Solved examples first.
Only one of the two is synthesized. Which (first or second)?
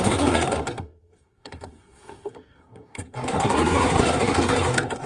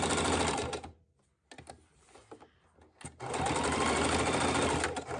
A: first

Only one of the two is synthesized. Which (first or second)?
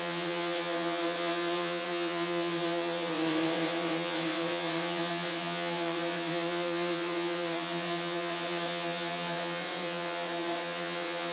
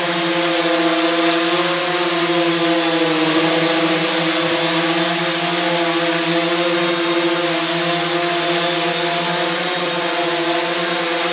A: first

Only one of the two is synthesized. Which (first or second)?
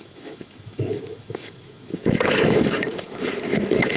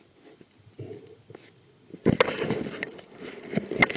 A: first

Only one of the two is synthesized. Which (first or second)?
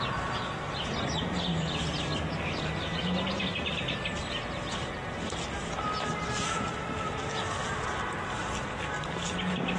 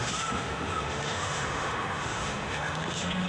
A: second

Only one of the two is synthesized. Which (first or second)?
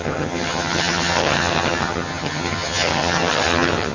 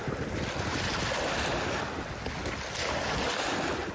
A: first